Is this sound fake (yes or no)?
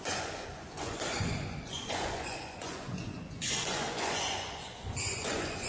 yes